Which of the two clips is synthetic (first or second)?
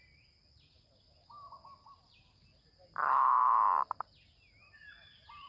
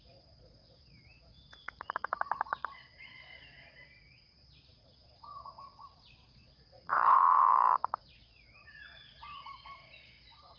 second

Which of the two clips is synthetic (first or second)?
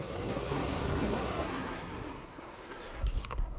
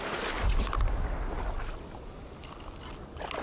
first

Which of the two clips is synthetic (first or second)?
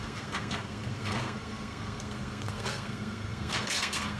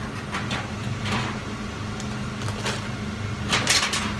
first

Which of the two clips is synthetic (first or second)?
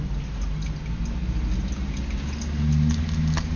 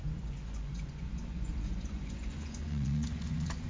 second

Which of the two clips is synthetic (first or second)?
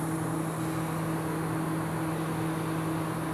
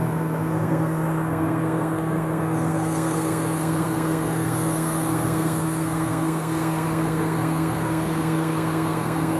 second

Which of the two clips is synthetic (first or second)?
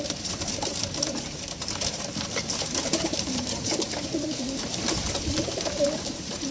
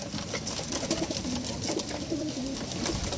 first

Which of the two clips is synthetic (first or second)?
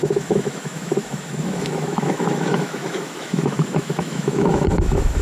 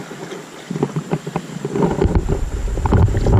first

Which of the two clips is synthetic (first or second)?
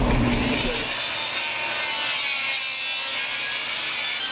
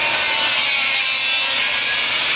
second